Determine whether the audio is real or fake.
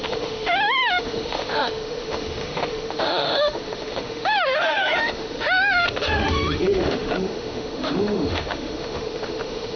fake